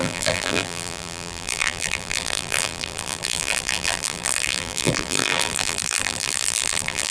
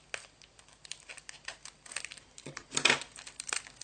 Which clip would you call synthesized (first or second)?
first